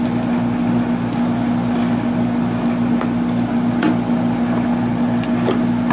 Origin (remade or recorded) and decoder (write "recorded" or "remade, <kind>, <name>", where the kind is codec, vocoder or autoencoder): recorded